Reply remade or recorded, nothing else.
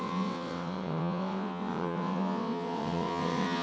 remade